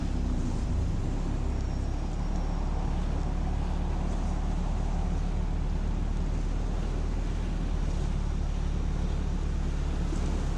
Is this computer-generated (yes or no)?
no